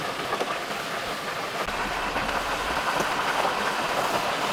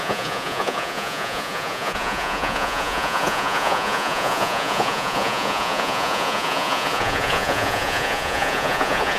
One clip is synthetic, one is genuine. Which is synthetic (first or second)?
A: second